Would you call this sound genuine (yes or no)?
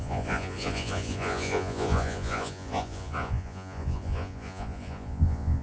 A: no